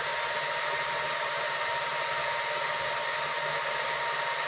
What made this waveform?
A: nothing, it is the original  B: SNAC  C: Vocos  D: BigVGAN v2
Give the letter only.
A